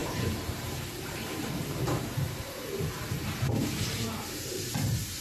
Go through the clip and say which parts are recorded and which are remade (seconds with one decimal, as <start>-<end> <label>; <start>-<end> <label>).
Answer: 0.0-5.2 remade